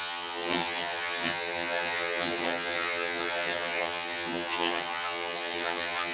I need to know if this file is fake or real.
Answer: fake